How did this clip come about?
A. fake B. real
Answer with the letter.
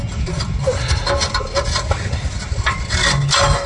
B